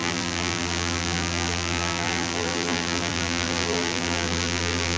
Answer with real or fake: fake